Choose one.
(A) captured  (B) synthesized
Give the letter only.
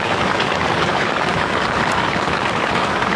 B